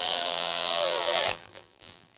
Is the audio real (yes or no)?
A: no